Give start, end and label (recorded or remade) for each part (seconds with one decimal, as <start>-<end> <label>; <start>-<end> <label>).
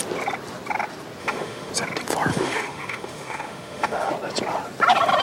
0.0-1.2 recorded; 1.2-1.7 remade; 1.7-2.3 recorded; 2.3-4.1 remade; 4.1-5.2 recorded